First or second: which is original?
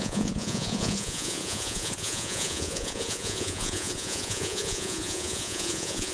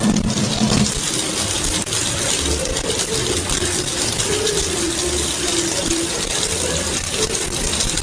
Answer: second